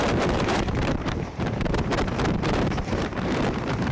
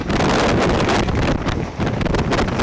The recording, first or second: second